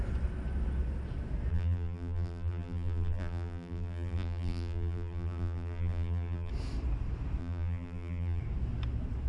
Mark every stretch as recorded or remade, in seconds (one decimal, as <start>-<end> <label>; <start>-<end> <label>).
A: 0.0-1.5 recorded; 1.5-6.5 remade; 6.5-7.4 recorded; 7.4-8.4 remade; 8.4-9.3 recorded

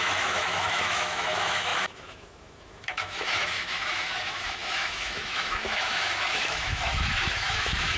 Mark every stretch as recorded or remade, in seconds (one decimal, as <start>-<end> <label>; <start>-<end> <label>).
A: 0.0-8.0 remade

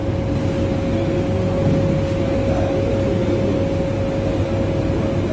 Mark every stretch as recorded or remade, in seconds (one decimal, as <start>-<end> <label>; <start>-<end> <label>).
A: 0.0-5.3 recorded

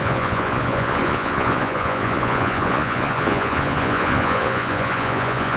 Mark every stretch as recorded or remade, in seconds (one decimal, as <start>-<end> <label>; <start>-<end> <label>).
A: 0.0-5.6 remade